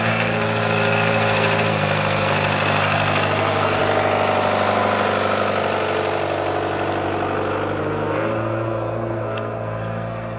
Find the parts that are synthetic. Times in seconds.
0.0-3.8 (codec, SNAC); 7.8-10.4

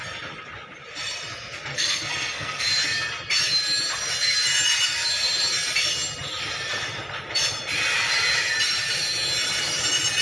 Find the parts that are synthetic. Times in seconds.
1.7-2.7 (codec, SNAC)

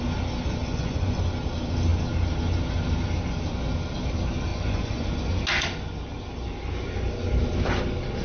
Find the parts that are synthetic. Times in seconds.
0.6-1.2 (vocoder, Vocos); 4.5-5.2

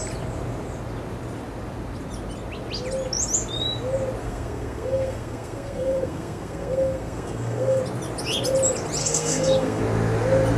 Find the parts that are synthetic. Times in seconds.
4.2-7.8 (codec, SNAC); 9.0-9.8

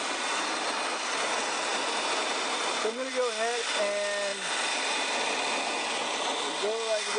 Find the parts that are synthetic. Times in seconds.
none